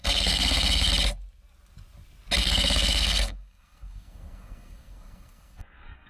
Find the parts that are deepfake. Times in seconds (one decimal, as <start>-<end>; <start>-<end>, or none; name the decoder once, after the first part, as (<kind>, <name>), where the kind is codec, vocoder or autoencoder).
0.0-0.9 (codec, SNAC); 2.4-6.1